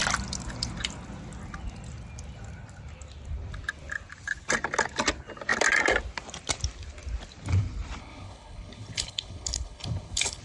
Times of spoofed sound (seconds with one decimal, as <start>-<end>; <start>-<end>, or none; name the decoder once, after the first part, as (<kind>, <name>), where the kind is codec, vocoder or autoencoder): 8.0-10.4 (codec, HILCodec)